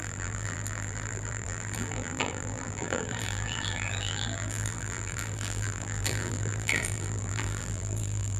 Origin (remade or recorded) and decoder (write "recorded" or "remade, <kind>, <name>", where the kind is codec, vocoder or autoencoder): remade, vocoder, BigVGAN v2